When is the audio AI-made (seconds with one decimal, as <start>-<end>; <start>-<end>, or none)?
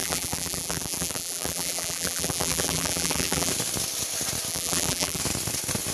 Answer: 0.0-3.5; 4.5-5.2